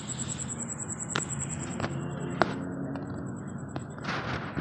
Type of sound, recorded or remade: recorded